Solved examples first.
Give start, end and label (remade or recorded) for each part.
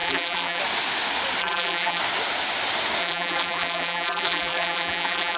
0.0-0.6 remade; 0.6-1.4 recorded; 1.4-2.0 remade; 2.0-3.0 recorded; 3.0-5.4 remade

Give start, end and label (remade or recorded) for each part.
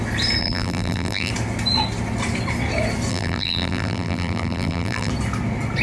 0.0-0.4 recorded; 0.4-1.3 remade; 1.3-3.1 recorded; 3.1-5.1 remade; 5.1-5.8 recorded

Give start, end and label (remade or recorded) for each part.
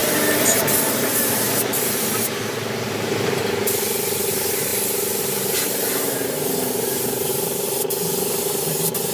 0.0-1.3 recorded; 1.3-4.7 remade; 4.7-5.2 recorded; 5.2-9.1 remade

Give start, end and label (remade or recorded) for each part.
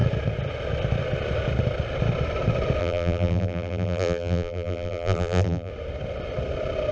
0.0-2.8 recorded; 2.8-5.7 remade; 5.7-6.9 recorded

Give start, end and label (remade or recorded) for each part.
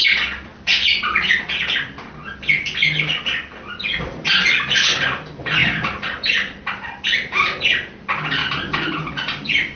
0.0-0.7 recorded; 0.7-1.3 remade; 1.3-5.6 recorded; 5.6-7.6 remade; 7.6-8.4 recorded; 8.4-9.1 remade; 9.1-9.8 recorded